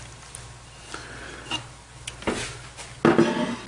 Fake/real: real